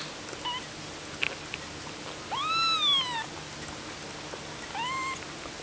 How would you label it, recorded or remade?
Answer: recorded